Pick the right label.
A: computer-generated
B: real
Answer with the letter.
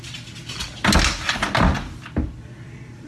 B